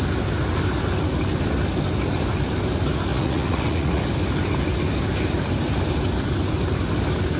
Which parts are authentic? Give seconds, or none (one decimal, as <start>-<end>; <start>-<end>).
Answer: 0.0-3.1; 4.0-7.4